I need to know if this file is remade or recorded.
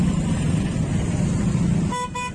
recorded